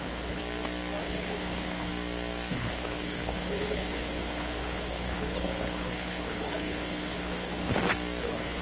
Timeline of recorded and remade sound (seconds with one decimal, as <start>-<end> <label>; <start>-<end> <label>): 0.0-0.4 remade; 0.4-1.0 recorded; 1.0-1.9 remade; 1.9-2.5 recorded; 2.5-7.7 remade; 7.7-8.2 recorded; 8.2-8.6 remade